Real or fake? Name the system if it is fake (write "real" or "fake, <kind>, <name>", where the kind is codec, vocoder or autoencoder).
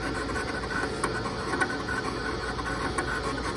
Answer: real